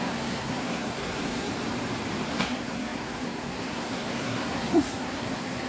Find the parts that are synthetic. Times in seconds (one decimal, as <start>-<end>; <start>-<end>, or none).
0.0-1.5; 2.3-5.7

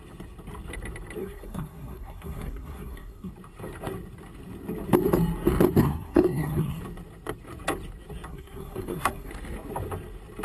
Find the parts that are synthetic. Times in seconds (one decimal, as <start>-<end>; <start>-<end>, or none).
1.2-3.3; 5.8-6.8; 8.3-9.3

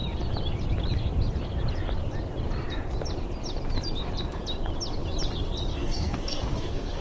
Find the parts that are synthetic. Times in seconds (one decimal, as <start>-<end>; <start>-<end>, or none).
5.7-7.0

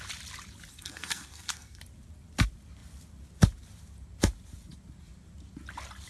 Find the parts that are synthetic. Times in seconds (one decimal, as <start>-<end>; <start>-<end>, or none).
0.7-1.8

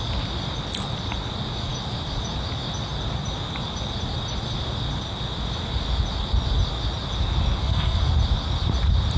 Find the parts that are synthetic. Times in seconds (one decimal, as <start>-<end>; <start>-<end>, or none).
7.6-8.1

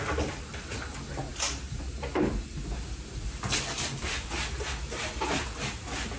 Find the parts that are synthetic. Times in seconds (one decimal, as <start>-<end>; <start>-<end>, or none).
none

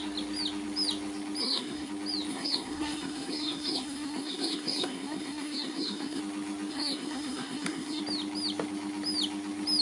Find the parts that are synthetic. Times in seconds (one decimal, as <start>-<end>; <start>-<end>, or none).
1.4-1.9; 2.3-6.2; 6.7-8.0

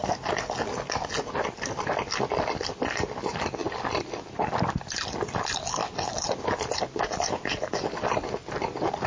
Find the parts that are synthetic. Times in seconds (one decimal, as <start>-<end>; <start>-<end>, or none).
none